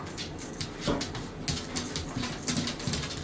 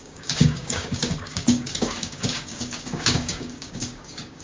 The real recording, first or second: first